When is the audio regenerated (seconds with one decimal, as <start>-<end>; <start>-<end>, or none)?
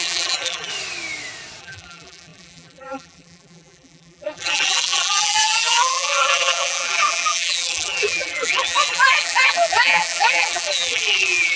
0.0-0.7; 1.6-11.6